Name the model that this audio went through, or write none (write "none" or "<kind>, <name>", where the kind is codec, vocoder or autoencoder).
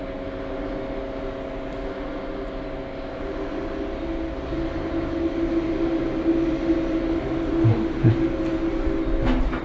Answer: none